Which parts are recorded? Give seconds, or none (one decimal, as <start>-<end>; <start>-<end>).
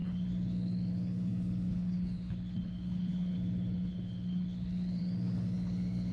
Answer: none